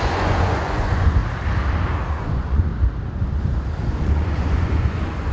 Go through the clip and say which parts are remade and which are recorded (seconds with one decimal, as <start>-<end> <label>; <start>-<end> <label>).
0.0-1.2 remade; 1.2-2.1 recorded; 2.1-2.7 remade; 2.7-3.9 recorded; 3.9-5.3 remade